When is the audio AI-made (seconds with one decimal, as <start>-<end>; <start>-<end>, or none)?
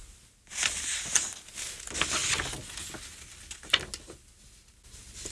none